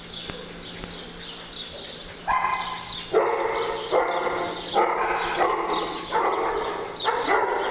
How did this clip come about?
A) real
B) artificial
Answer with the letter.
A